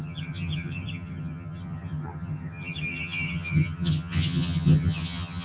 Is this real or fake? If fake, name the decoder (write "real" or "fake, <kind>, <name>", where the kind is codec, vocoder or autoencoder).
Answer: fake, vocoder, HiFi-GAN